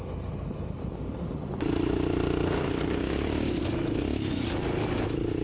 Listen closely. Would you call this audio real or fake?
real